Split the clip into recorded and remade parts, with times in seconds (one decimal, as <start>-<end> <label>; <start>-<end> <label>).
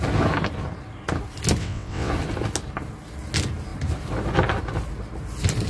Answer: 0.0-1.6 recorded; 1.6-2.1 remade; 2.1-5.7 recorded